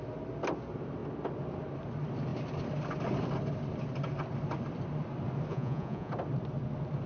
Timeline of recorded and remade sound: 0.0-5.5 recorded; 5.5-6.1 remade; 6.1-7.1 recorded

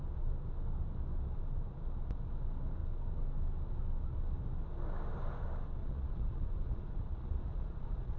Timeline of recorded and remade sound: 0.0-5.8 recorded; 5.8-8.2 remade

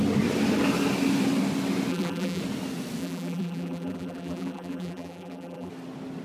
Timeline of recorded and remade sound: 0.0-1.9 recorded; 1.9-2.4 remade; 2.4-3.0 recorded; 3.0-5.7 remade; 5.7-6.2 recorded

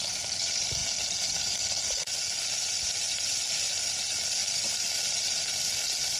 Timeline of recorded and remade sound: 0.0-6.2 recorded

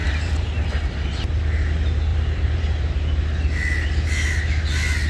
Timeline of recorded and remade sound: 0.0-1.3 remade; 1.3-2.1 recorded; 2.1-3.1 remade; 3.1-5.1 recorded

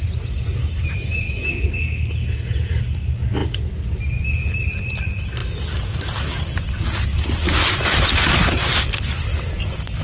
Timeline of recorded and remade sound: 0.0-1.5 recorded; 1.5-2.1 remade; 2.1-10.0 recorded

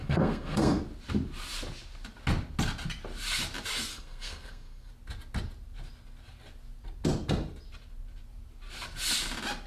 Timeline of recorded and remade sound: 0.0-0.8 remade; 0.8-3.9 recorded; 3.9-4.9 remade; 4.9-9.7 recorded